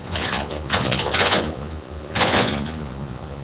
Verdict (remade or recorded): remade